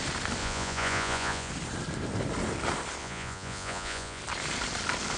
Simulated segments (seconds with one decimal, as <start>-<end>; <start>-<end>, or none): 0.4-1.5; 3.0-4.2

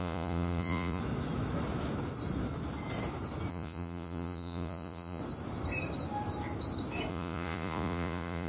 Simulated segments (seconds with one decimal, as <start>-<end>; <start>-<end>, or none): 0.0-1.0; 3.5-5.2; 7.1-8.5

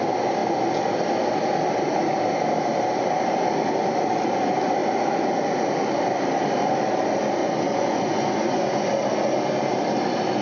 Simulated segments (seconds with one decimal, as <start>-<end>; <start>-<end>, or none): 7.4-8.9

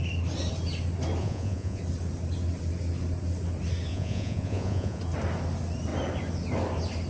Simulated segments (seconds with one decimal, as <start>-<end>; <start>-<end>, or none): 1.2-1.8; 3.9-5.0

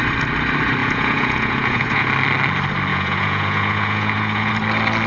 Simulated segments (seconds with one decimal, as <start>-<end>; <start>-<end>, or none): 0.8-2.1; 2.9-4.5

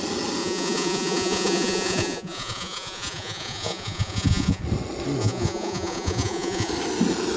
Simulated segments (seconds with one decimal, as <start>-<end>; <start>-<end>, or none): 0.4-4.6; 5.2-6.7

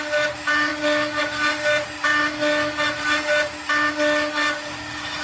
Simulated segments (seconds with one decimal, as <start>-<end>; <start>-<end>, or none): none

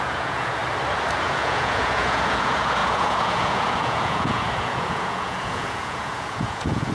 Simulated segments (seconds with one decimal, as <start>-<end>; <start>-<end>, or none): 0.0-0.6; 1.2-6.9